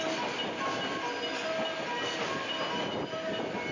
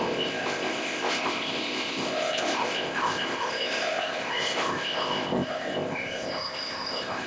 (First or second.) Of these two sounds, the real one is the first